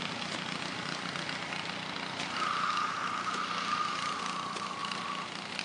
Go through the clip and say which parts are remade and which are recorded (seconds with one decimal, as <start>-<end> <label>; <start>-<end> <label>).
0.0-4.8 recorded; 4.8-5.6 remade

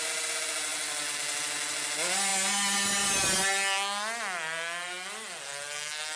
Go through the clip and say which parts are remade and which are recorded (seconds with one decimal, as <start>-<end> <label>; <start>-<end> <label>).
0.0-6.2 recorded

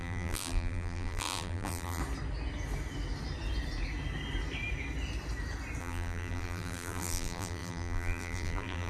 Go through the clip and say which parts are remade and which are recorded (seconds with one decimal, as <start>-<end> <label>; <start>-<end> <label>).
0.0-2.0 remade; 2.0-5.8 recorded; 5.8-8.9 remade

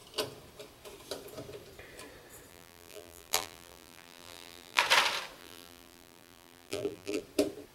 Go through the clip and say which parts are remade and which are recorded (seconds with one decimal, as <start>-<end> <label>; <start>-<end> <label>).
0.0-2.5 recorded; 2.5-4.8 remade; 4.8-5.4 recorded; 5.4-7.2 remade; 7.2-7.7 recorded

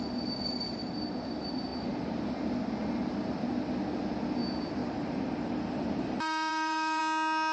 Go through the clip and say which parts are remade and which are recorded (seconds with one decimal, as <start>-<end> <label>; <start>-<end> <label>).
0.0-1.7 recorded; 1.7-2.2 remade; 2.2-4.8 recorded; 4.8-7.0 remade; 7.0-7.5 recorded

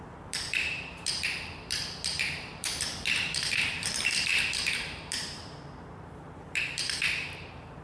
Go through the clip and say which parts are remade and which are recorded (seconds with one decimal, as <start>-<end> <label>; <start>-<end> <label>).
0.0-7.8 remade

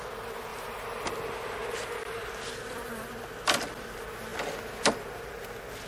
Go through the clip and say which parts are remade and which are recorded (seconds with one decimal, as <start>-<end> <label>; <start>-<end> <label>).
0.0-0.5 recorded; 0.5-1.1 remade; 1.1-5.9 recorded

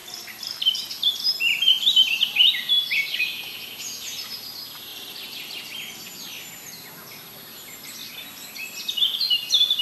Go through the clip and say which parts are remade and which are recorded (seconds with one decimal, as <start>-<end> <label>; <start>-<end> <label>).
0.0-0.9 remade; 0.9-4.9 recorded; 4.9-6.0 remade; 6.0-9.8 recorded